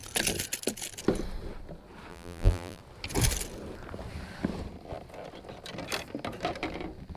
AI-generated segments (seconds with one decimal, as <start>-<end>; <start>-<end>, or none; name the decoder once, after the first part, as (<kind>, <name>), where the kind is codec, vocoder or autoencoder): 2.1-2.8 (vocoder, BigVGAN v2)